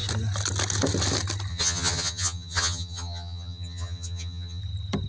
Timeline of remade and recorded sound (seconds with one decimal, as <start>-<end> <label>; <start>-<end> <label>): 0.0-1.5 recorded; 1.5-4.6 remade; 4.6-5.1 recorded